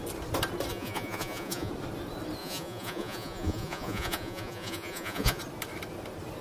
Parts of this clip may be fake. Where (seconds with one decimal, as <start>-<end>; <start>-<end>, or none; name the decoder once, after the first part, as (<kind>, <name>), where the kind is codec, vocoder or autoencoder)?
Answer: 0.7-1.7 (vocoder, Vocos); 2.4-5.4